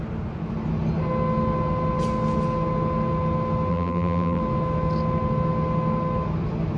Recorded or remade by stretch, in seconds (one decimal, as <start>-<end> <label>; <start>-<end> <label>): 0.0-3.7 recorded; 3.7-4.4 remade; 4.4-6.8 recorded